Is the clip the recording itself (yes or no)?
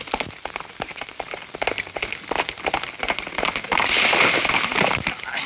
yes